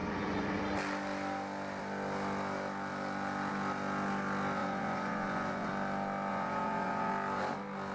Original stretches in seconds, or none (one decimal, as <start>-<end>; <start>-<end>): 0.6-4.6; 5.7-6.3; 7.1-7.9